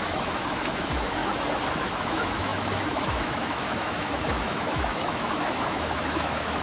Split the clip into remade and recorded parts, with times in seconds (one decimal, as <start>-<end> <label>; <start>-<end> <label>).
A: 0.0-1.2 remade; 1.2-1.7 recorded; 1.7-6.6 remade

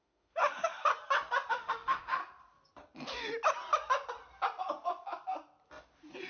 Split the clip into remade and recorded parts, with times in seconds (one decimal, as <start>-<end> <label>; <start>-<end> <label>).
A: 0.0-0.9 remade; 0.9-1.5 recorded; 1.5-2.2 remade; 2.2-6.3 recorded

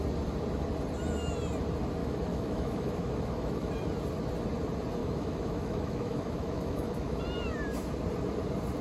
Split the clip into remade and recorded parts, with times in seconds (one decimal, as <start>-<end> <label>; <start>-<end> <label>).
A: 0.0-2.0 recorded; 2.0-3.7 remade; 3.7-5.0 recorded; 5.0-7.2 remade; 7.2-8.8 recorded